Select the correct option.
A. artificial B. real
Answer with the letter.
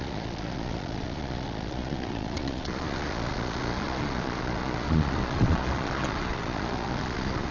A